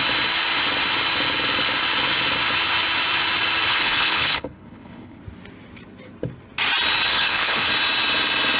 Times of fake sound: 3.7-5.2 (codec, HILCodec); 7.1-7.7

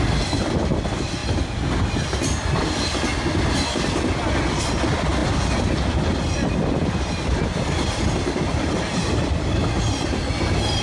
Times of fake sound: 0.0-1.2 (vocoder, BigVGAN v2); 2.6-3.1; 4.6-5.2; 6.0-10.8